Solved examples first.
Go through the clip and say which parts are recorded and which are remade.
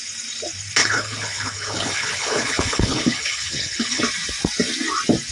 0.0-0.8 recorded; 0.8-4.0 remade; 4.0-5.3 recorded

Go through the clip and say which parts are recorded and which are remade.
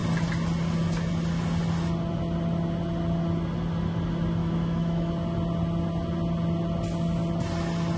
0.0-4.4 recorded; 4.4-5.1 remade; 5.1-8.0 recorded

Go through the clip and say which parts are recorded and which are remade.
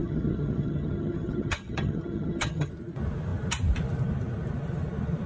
0.0-2.7 remade; 2.7-5.3 recorded